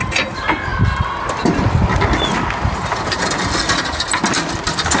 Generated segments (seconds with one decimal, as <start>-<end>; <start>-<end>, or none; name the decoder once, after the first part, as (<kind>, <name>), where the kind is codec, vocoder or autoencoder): none